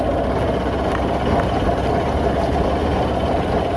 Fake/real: real